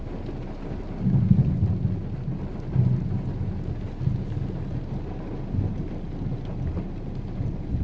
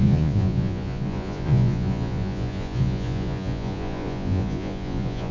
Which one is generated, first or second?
second